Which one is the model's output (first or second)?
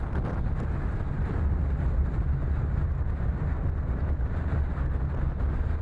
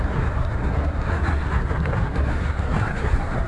second